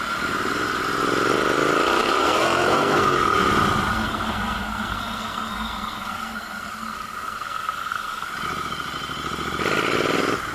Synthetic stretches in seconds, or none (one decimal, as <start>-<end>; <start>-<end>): 2.0-3.4; 3.9-8.3